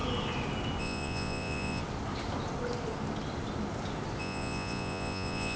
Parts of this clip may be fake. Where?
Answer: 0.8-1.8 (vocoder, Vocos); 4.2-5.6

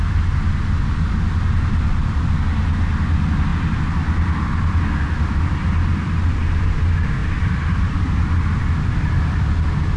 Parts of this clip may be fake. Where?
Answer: 5.9-6.4 (vocoder, BigVGAN v2); 7.2-8.6

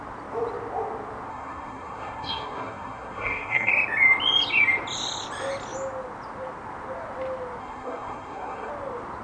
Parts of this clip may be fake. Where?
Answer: 1.3-3.7 (codec, SNAC); 7.6-8.7

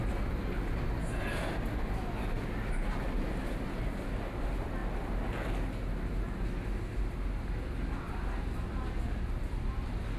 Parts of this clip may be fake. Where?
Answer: none

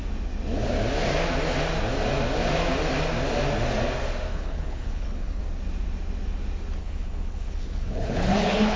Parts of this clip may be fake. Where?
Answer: 4.3-5.4 (codec, HILCodec); 6.8-8.8

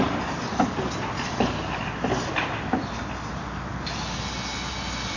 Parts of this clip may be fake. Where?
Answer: none

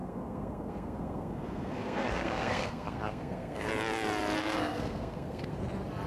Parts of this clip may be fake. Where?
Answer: 0.0-3.7 (codec, SNAC); 4.4-5.6

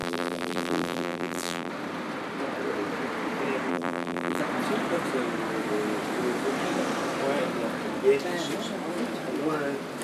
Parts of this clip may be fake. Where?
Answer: 0.0-1.7 (vocoder, BigVGAN v2); 3.7-4.4